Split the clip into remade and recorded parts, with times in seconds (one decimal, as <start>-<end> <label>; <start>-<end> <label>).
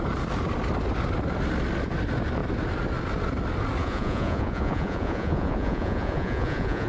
0.0-3.8 recorded; 3.8-6.9 remade